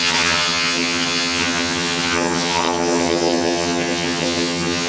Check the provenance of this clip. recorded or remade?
remade